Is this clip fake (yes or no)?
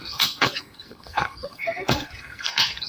yes